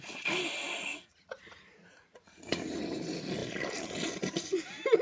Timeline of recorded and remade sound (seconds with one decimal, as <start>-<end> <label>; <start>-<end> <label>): 0.0-0.9 recorded; 0.9-2.8 remade; 2.8-5.0 recorded